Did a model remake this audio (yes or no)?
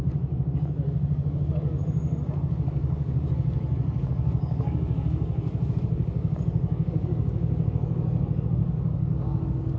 yes